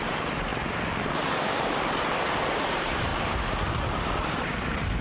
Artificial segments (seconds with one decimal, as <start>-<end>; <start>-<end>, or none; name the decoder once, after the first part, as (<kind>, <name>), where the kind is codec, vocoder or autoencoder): 0.0-0.5 (vocoder, BigVGAN v2); 2.6-3.1; 4.3-5.0